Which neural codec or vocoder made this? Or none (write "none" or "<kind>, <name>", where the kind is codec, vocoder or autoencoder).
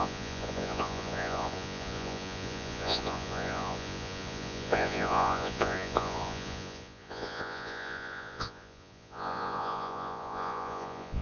vocoder, Vocos